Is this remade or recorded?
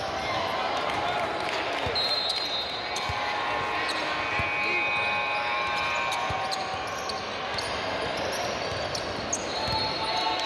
recorded